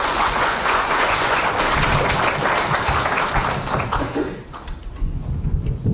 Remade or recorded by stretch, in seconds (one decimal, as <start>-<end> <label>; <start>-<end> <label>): 0.0-1.4 remade; 1.4-4.9 recorded; 4.9-5.9 remade